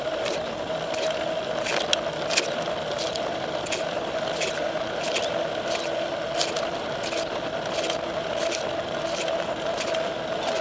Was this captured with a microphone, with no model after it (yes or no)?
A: yes